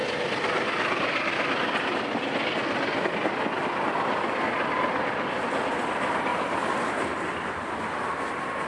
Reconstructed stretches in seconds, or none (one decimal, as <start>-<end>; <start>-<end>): none